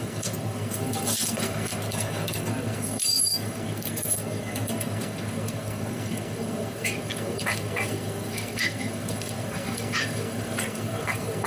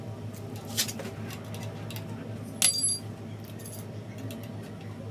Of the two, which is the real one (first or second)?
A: second